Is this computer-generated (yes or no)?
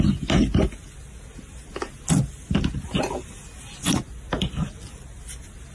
no